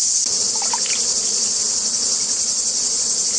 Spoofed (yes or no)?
no